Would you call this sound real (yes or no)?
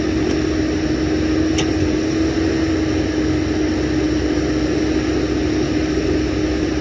yes